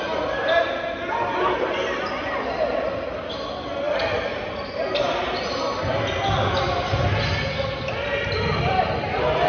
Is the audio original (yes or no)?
yes